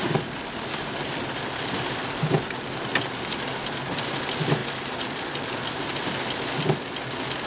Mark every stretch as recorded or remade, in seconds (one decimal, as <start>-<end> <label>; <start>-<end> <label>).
0.0-7.5 recorded